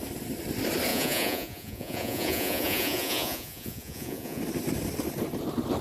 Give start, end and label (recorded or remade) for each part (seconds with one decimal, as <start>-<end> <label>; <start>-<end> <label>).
0.0-0.9 recorded; 0.9-4.4 remade; 4.4-5.8 recorded